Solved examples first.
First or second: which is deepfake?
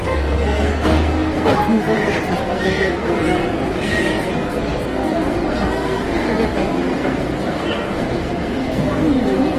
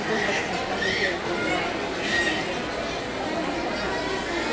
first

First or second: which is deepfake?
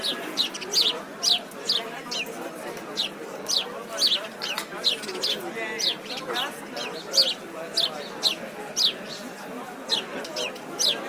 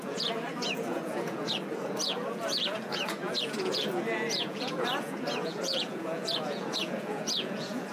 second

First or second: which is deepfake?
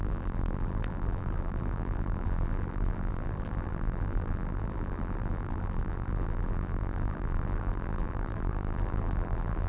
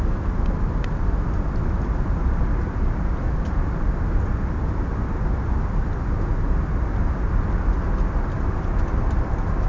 first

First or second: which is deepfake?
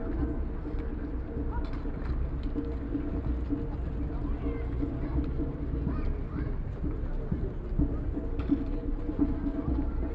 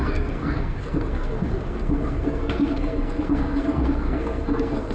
second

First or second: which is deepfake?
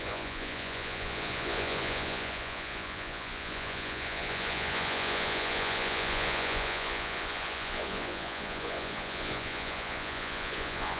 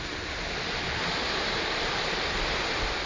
first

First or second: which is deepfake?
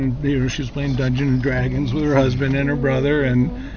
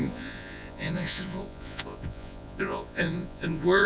second